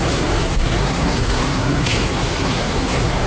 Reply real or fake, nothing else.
fake